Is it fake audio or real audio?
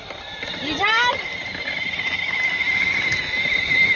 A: real